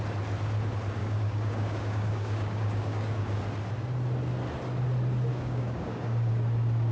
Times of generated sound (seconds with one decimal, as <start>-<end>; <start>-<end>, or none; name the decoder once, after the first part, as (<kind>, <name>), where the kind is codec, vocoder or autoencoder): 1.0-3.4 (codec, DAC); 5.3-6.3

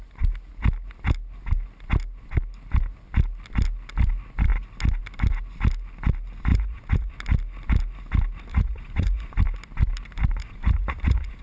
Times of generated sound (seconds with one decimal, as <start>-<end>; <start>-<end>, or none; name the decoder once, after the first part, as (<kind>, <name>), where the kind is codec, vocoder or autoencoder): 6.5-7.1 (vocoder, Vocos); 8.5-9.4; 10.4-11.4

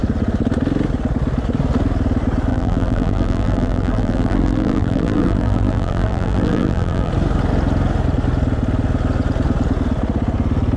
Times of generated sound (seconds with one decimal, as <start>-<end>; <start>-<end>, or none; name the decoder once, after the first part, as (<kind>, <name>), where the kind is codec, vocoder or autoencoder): 2.5-7.1 (vocoder, BigVGAN v2)

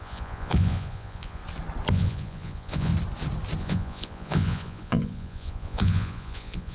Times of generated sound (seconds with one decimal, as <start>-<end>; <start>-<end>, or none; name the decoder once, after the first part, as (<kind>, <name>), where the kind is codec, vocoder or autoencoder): 0.0-1.4 (vocoder, Vocos); 1.9-2.9; 3.6-6.7

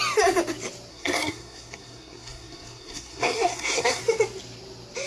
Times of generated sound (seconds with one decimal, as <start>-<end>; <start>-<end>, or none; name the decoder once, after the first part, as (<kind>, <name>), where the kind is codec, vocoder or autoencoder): 0.9-4.0 (codec, SNAC)

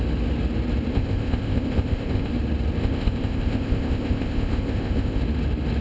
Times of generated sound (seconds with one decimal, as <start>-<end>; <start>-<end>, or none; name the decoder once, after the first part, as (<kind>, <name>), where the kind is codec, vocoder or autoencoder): 0.9-2.3 (codec, ZipCodec); 2.8-5.2

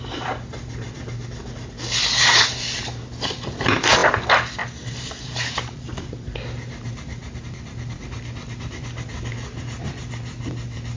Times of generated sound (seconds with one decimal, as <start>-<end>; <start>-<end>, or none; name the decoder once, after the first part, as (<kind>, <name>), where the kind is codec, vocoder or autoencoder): 4.6-5.9 (vocoder, BigVGAN v2)